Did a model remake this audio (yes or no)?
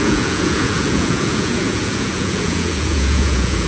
yes